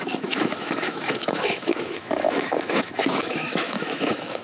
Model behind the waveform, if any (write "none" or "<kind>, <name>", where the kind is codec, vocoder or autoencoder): autoencoder, DAC-VAE